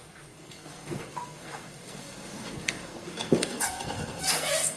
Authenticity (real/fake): fake